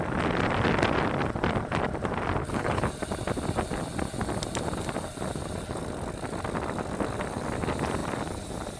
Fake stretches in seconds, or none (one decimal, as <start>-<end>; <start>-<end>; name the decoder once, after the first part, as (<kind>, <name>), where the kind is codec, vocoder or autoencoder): 2.4-2.9 (codec, HILCodec)

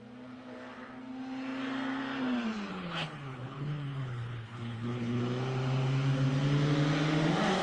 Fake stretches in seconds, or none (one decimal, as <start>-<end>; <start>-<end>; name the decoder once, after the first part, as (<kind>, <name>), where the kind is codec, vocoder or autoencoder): 2.7-5.2 (codec, HILCodec)

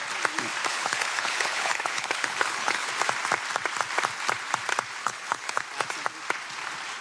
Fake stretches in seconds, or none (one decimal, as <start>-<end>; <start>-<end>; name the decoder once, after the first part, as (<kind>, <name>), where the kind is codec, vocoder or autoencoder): 0.7-2.9 (codec, HILCodec); 5.0-5.6

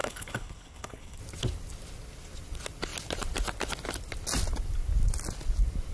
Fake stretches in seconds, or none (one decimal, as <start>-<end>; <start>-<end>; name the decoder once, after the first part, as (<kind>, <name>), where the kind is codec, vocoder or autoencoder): 0.0-1.2 (codec, HILCodec)

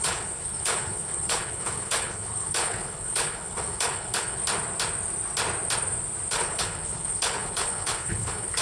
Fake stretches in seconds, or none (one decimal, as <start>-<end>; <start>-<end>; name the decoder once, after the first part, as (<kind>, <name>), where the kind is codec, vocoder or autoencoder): 0.0-4.4 (codec, HILCodec); 6.3-8.6

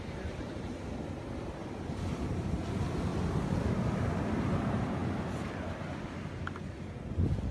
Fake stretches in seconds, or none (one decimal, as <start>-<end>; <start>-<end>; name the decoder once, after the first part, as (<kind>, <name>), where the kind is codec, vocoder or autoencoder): none

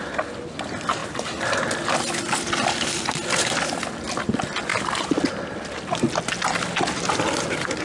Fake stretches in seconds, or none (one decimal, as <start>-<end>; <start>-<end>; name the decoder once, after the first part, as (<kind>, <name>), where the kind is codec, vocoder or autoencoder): none

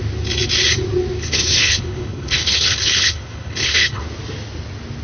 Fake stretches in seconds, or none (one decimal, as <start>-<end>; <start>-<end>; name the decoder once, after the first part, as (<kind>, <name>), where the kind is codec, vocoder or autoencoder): 1.2-4.0 (codec, HILCodec)